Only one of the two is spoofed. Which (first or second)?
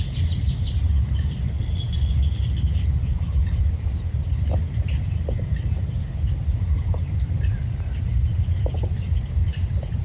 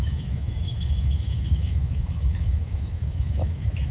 second